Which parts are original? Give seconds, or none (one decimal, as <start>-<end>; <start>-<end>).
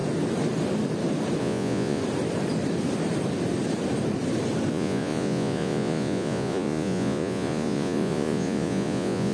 0.0-1.4; 2.0-4.7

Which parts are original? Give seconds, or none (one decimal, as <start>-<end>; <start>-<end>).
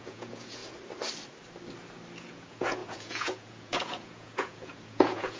0.6-2.2